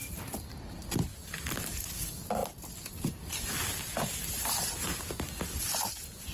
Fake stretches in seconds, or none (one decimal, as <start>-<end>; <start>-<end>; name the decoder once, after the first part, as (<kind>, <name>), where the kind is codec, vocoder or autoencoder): 1.1-1.9 (vocoder, BigVGAN v2); 2.4-5.7